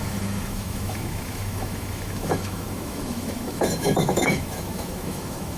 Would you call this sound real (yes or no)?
no